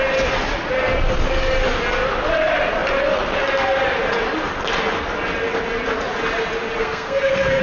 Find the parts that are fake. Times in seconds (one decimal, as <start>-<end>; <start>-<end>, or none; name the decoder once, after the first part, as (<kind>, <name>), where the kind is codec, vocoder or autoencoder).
6.8-7.6 (codec, SNAC)